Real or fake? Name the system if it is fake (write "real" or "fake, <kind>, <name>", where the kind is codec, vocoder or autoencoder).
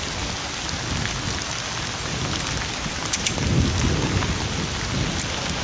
real